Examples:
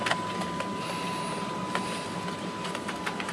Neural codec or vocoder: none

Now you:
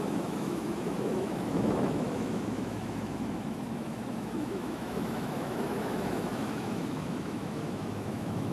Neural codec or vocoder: autoencoder, DAC-VAE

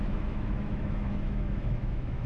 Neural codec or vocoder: autoencoder, DAC-VAE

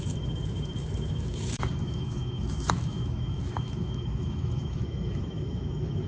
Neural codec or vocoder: autoencoder, DAC-VAE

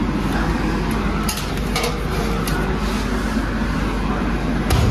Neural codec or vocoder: none